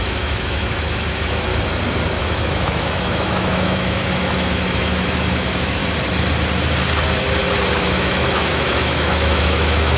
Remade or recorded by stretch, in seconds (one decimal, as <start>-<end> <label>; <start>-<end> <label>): 0.0-1.5 remade; 1.5-2.2 recorded; 2.2-5.8 remade; 5.8-7.8 recorded; 7.8-10.0 remade